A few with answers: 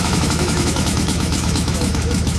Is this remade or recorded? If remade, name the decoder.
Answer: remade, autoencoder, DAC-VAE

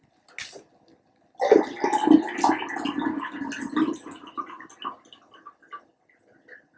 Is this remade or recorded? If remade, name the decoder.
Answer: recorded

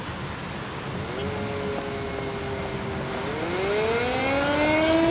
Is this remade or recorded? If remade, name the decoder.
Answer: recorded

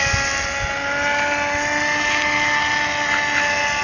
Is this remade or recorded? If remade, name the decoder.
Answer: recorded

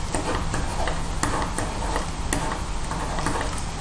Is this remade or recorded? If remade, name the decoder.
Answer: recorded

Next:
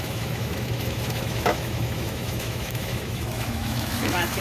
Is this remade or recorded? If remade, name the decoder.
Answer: remade, autoencoder, DAC-VAE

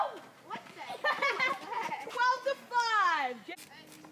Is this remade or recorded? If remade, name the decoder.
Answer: recorded